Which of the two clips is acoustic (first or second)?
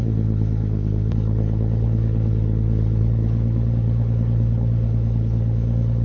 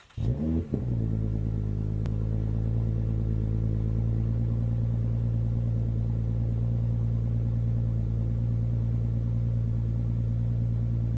second